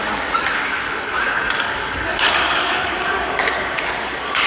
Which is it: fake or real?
fake